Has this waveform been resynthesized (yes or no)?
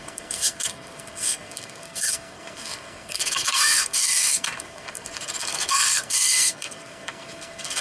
yes